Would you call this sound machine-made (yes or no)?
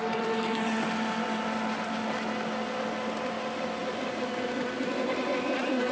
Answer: no